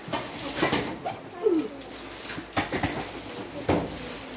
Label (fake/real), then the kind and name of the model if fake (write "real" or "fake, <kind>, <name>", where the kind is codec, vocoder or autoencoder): real